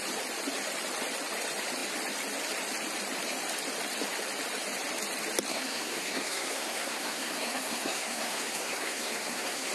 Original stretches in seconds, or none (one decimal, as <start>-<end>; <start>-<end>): 0.0-5.5